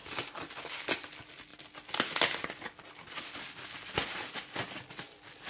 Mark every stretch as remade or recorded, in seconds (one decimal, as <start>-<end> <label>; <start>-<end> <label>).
0.0-5.5 recorded